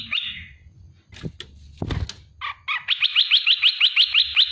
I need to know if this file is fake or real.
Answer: real